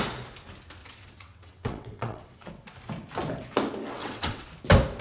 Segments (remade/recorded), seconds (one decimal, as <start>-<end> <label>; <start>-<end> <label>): 0.0-0.8 recorded; 0.8-2.5 remade; 2.5-4.0 recorded; 4.0-4.5 remade; 4.5-5.0 recorded